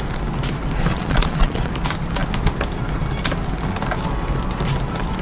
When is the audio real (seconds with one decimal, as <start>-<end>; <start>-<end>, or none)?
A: 0.0-0.9; 1.7-5.2